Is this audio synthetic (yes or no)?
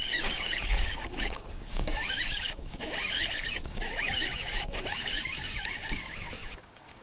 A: yes